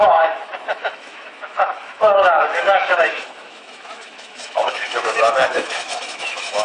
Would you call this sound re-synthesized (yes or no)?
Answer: yes